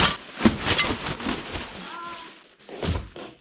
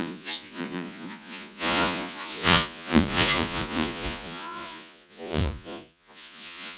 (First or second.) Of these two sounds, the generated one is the second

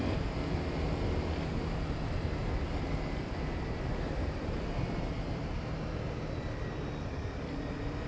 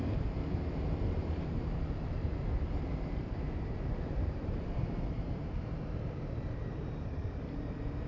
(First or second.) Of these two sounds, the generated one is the second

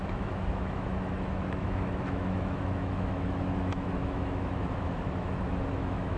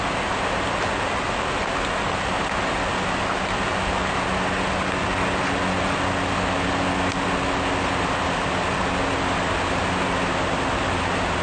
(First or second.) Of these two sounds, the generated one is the first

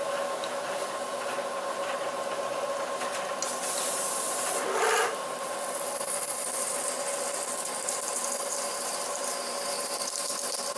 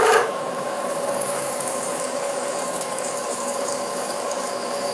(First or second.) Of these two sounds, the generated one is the second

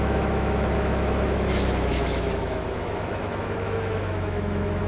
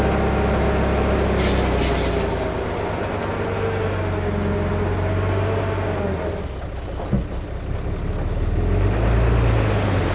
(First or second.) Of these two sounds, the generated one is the first